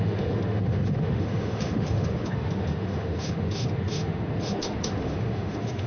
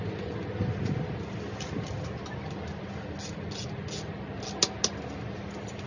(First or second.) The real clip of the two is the second